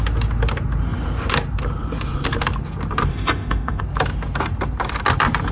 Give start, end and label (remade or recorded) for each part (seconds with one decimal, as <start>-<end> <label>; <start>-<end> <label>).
0.0-3.1 recorded; 3.1-3.8 remade; 3.8-5.5 recorded